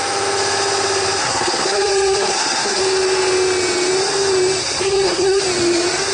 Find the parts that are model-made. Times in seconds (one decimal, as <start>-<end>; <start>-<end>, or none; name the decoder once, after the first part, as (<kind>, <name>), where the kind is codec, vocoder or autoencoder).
1.2-2.8 (codec, SNAC); 4.6-5.4